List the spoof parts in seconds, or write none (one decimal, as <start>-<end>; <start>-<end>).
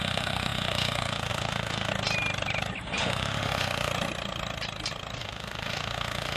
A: 0.0-1.9; 3.0-3.9; 5.2-6.4